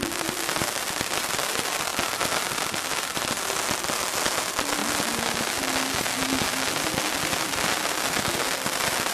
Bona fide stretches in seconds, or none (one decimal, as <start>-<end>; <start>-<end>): 4.8-6.7